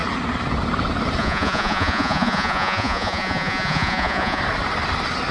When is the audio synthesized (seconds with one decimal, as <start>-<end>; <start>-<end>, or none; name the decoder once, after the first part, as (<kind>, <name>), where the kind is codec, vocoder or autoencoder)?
1.2-4.4 (vocoder, Vocos)